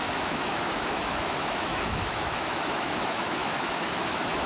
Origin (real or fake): fake